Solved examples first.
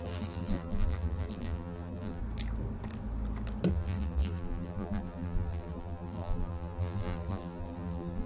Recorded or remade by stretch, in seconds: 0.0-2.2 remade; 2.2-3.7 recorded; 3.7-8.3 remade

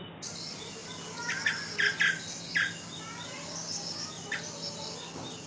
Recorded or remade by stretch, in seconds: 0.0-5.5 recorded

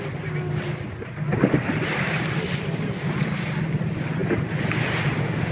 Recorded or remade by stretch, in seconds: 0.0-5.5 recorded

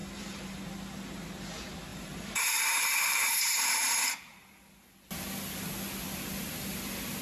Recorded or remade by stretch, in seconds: 0.0-0.6 remade; 0.6-1.9 recorded; 1.9-4.1 remade; 4.1-7.2 recorded

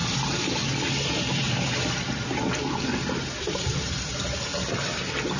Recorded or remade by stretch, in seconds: 0.0-3.2 recorded; 3.2-4.5 remade; 4.5-5.4 recorded